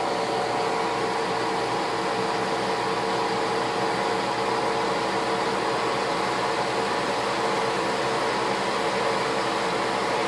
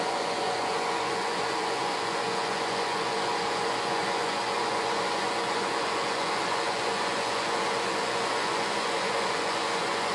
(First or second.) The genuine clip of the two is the first